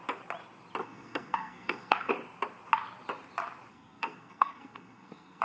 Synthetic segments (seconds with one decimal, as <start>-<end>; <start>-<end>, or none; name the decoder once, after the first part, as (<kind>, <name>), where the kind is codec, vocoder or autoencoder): 0.8-2.1 (codec, SNAC); 3.7-5.4